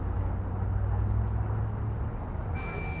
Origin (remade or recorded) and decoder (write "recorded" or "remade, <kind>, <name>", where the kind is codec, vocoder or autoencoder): recorded